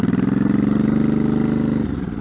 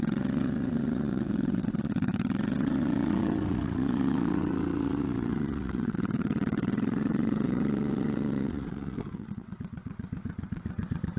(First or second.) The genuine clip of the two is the first